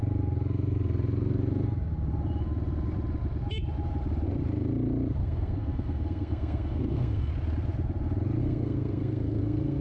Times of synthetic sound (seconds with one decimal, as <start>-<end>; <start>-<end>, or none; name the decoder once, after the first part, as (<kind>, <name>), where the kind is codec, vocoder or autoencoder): 5.2-7.3 (codec, SNAC); 8.4-9.8